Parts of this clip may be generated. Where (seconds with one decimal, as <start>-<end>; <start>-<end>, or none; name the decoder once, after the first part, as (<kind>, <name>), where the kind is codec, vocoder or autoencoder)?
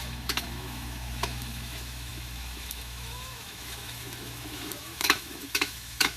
0.0-6.2 (autoencoder, DAC-VAE)